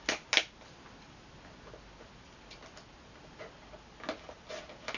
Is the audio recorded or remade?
recorded